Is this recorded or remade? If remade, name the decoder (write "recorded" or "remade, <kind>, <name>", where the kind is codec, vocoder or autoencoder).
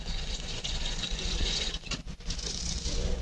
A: remade, vocoder, Vocos